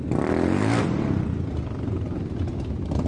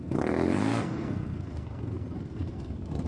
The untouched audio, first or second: first